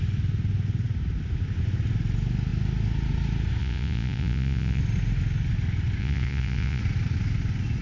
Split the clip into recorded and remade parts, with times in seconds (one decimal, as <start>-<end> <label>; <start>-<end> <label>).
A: 0.0-3.6 recorded; 3.6-4.8 remade; 4.8-6.0 recorded; 6.0-6.8 remade; 6.8-7.8 recorded